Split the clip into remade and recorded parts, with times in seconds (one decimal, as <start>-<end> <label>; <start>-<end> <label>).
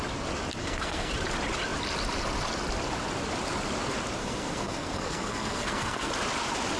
0.0-0.6 recorded; 0.6-1.1 remade; 1.1-4.2 recorded; 4.2-6.1 remade; 6.1-6.8 recorded